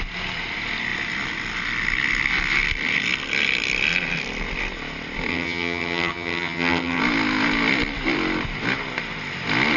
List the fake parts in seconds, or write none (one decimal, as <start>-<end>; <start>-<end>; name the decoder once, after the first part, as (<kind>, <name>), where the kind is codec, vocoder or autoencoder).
5.3-7.0 (vocoder, HiFi-GAN)